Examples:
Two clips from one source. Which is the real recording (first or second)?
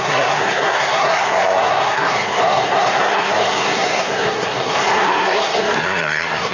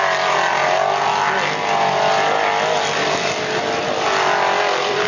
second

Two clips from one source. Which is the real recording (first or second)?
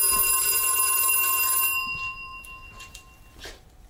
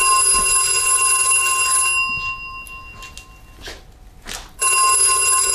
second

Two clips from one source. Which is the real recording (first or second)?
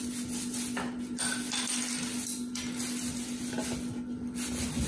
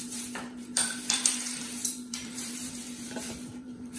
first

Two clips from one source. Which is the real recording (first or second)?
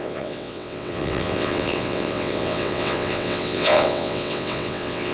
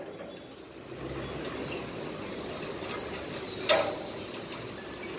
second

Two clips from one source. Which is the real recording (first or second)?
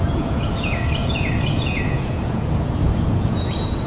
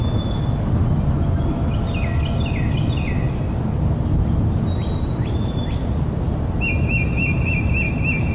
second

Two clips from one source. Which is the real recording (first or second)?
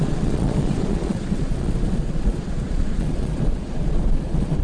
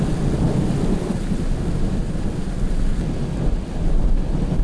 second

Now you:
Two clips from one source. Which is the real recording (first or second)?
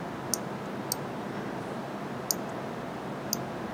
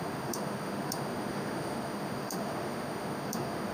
first